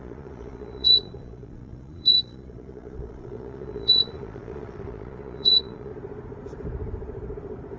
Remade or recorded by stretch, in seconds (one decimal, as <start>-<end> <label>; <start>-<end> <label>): 0.0-5.9 remade; 5.9-7.8 recorded